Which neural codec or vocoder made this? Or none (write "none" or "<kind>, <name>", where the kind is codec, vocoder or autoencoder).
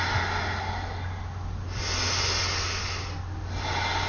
none